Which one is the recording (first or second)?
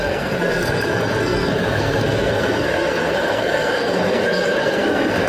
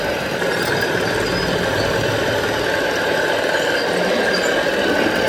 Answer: second